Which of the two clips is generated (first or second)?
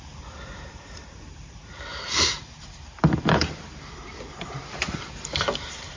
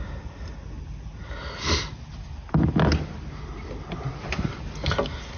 first